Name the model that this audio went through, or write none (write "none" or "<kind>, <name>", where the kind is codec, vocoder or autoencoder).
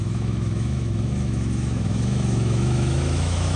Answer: autoencoder, DAC-VAE